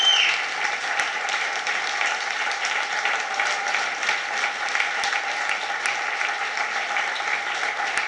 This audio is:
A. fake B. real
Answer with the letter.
B